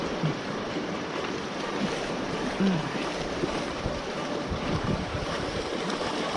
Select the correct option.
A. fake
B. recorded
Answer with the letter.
A